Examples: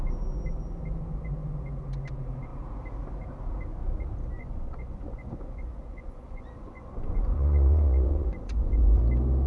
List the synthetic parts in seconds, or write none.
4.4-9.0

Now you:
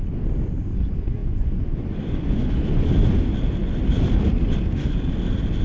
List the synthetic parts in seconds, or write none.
1.2-2.9

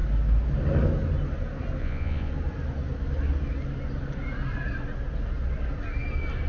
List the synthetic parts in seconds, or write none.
1.8-2.3

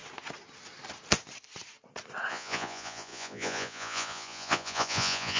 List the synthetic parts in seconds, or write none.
2.3-5.4